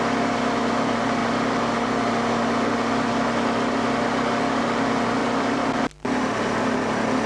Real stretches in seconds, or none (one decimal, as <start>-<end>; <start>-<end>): 0.0-5.2; 5.8-7.3